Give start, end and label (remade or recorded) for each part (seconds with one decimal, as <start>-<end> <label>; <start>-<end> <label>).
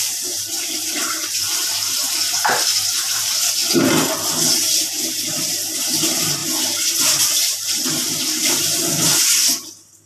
0.0-3.6 remade; 3.6-4.5 recorded; 4.5-6.4 remade; 6.4-7.0 recorded; 7.0-10.1 remade